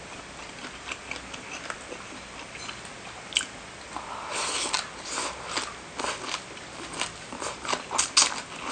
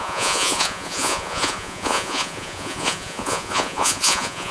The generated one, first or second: second